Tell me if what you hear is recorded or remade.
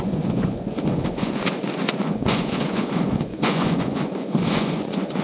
remade